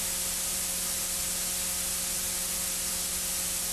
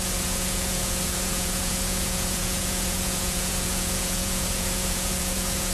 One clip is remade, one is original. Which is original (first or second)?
first